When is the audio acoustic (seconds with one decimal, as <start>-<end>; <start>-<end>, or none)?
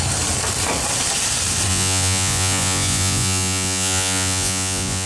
0.0-1.7